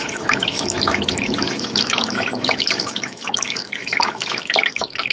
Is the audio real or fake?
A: fake